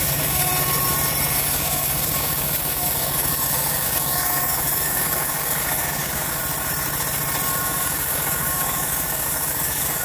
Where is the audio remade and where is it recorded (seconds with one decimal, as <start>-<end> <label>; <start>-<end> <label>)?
0.0-0.5 remade; 0.5-1.3 recorded; 1.3-6.4 remade; 6.4-7.6 recorded; 7.6-10.0 remade